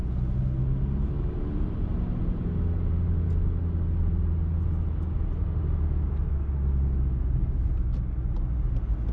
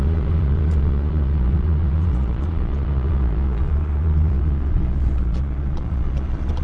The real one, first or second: first